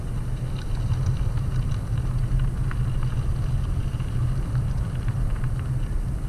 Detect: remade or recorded recorded